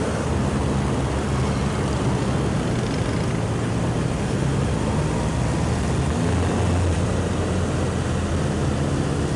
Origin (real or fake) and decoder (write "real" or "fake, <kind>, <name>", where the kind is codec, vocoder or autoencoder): real